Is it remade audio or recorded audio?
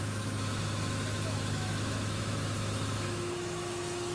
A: remade